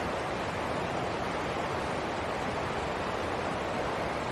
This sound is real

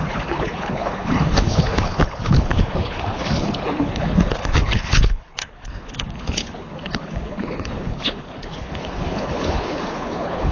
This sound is fake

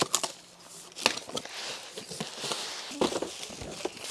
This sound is real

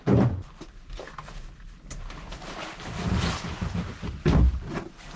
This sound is real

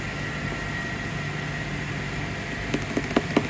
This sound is real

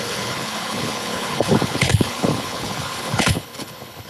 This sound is fake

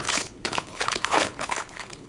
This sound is fake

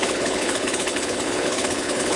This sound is fake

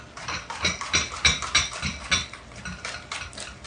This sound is real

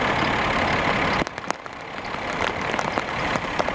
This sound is real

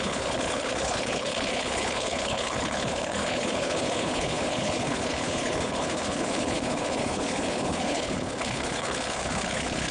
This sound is fake